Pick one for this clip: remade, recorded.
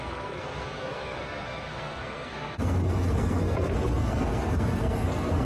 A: remade